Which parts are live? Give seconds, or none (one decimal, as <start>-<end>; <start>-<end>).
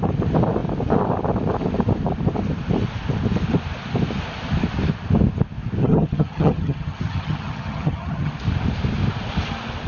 0.0-5.8; 8.3-9.9